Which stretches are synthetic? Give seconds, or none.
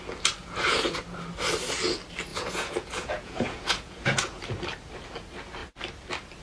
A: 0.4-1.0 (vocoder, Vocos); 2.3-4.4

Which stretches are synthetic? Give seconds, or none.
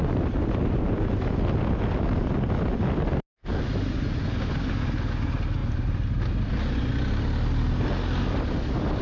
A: 0.8-1.3 (vocoder, BigVGAN v2); 5.6-6.1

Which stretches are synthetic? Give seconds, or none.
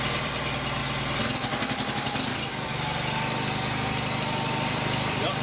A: 0.0-0.8 (vocoder, BigVGAN v2); 3.6-5.4